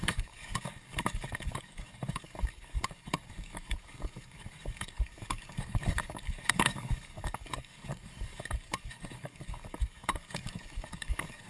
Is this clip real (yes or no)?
no